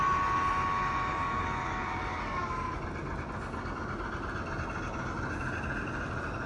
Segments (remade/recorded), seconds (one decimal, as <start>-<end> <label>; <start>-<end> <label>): 0.0-1.1 recorded; 1.1-2.8 remade; 2.8-6.5 recorded